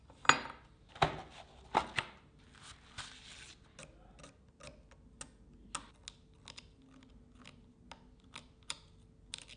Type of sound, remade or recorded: recorded